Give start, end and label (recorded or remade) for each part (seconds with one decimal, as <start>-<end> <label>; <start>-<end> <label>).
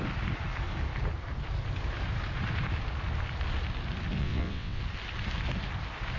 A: 0.0-4.2 recorded; 4.2-4.8 remade; 4.8-6.2 recorded